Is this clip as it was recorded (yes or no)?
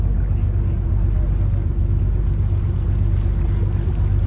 yes